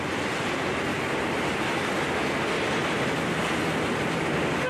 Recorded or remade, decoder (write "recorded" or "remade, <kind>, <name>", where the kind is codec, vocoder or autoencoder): recorded